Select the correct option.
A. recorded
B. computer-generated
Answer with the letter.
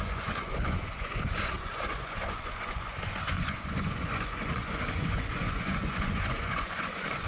B